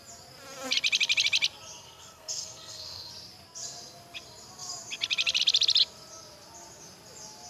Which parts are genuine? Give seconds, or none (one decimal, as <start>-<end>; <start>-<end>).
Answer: 0.0-1.8; 3.1-7.5